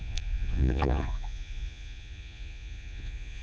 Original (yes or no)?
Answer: no